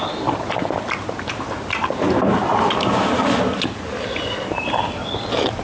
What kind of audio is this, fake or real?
real